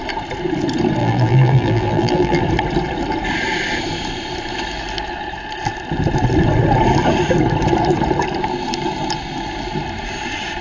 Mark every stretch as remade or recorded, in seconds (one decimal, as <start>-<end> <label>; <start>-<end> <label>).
0.0-1.0 recorded; 1.0-2.4 remade; 2.4-10.6 recorded